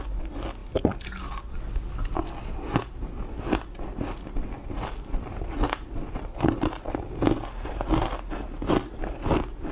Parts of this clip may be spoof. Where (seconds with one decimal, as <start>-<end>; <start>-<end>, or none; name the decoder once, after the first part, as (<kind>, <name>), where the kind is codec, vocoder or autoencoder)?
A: none